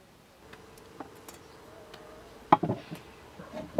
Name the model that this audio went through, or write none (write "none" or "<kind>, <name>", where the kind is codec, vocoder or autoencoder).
none